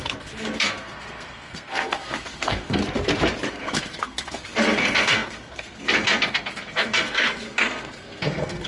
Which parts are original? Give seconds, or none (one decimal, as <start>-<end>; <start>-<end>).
2.8-3.5